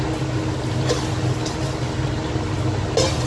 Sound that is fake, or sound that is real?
real